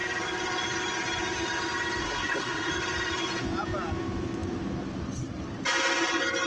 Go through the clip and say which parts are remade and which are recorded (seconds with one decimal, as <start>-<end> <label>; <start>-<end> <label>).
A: 0.0-2.0 recorded; 2.0-2.7 remade; 2.7-6.5 recorded